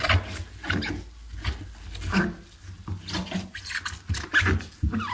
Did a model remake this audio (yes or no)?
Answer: no